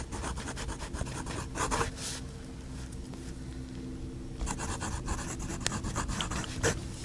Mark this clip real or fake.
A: real